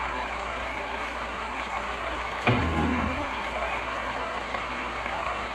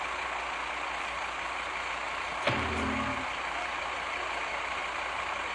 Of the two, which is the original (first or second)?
second